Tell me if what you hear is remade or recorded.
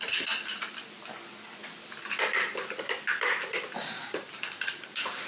remade